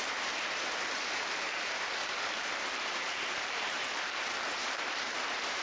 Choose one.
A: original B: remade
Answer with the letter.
B